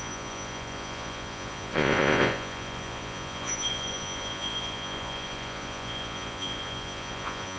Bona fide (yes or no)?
no